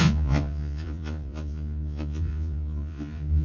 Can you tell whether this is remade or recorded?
remade